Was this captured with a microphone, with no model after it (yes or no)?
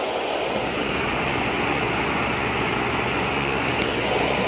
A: no